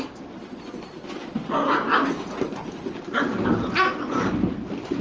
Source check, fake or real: real